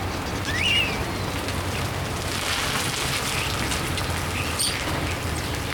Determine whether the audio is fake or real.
real